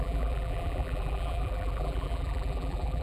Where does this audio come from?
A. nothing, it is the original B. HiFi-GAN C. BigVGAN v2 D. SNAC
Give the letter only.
C